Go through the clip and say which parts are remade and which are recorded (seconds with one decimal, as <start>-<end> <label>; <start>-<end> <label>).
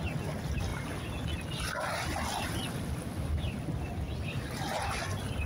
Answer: 0.0-0.7 recorded; 0.7-3.6 remade; 3.6-5.5 recorded